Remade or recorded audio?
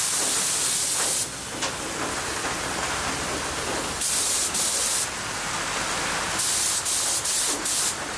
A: recorded